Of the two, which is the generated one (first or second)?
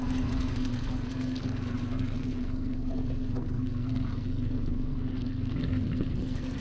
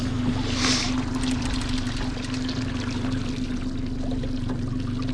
first